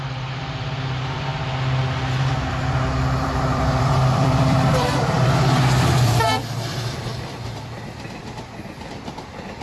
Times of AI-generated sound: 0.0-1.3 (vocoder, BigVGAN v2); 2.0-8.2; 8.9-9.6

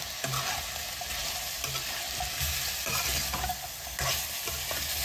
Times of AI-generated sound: none

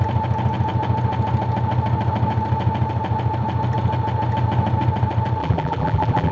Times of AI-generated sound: 5.4-6.3 (vocoder, BigVGAN v2)

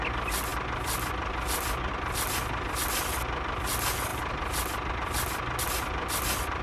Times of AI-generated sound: none

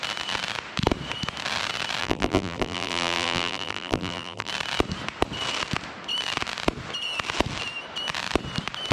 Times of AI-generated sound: 2.0-4.5 (vocoder, BigVGAN v2)